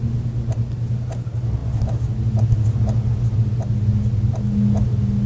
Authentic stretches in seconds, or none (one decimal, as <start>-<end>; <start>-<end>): 0.0-5.3